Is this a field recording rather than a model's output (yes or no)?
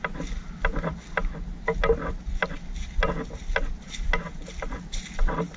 yes